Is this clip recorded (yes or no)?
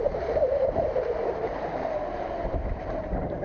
no